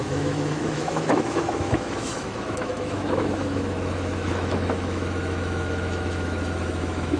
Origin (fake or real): fake